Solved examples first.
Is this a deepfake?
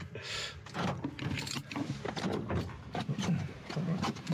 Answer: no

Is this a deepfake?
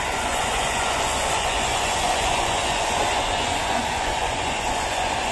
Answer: yes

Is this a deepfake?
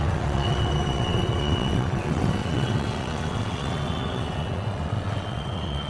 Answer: yes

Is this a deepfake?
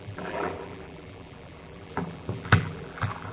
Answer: yes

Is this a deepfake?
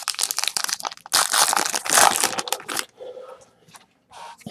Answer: no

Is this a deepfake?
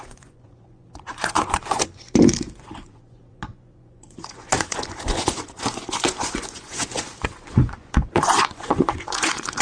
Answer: yes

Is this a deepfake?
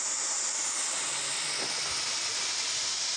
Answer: no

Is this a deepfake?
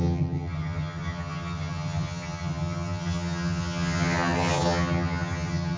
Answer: yes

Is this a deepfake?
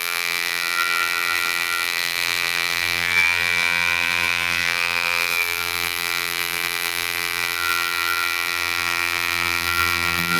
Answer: yes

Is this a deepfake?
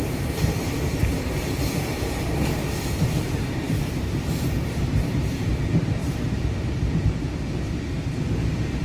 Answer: yes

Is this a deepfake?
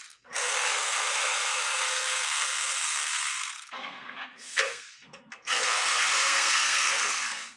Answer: yes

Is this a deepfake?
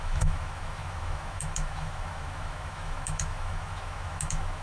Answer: yes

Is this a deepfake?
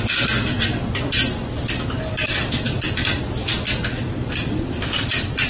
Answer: no